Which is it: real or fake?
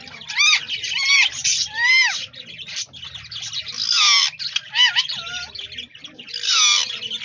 real